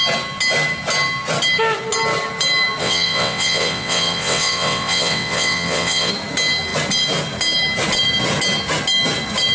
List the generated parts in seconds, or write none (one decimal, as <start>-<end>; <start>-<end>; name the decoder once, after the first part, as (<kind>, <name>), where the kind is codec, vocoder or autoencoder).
2.8-6.1 (vocoder, WaveNeXt)

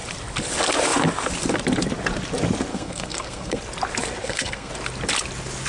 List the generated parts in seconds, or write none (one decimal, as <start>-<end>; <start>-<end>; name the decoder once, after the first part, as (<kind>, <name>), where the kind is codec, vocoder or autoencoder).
2.7-3.6 (codec, SNAC); 4.2-4.7

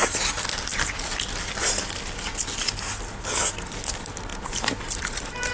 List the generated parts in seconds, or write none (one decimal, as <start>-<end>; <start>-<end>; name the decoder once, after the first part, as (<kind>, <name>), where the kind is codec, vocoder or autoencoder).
4.3-5.5 (vocoder, BigVGAN v2)

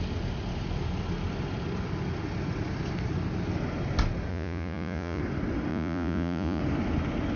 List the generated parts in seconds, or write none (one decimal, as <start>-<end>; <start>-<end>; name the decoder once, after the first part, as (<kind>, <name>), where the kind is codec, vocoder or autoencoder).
4.3-5.2 (vocoder, Vocos); 5.7-6.6

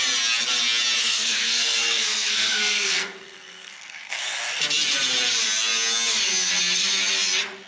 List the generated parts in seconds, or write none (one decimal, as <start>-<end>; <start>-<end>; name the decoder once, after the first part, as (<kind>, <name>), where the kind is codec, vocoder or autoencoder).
1.0-4.2 (codec, SNAC)

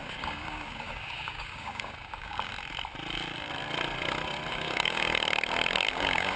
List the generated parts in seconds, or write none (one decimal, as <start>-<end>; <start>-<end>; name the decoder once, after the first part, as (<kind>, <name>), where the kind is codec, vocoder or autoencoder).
0.0-2.5 (codec, DAC); 4.5-5.1; 5.9-6.4